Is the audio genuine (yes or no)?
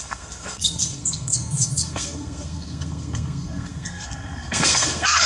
no